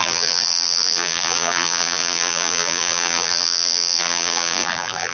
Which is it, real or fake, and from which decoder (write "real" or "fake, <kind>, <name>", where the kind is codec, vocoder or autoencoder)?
fake, vocoder, BigVGAN v2